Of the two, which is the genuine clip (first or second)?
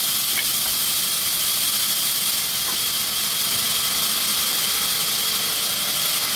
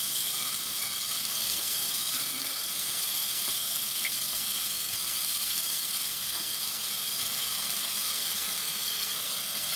first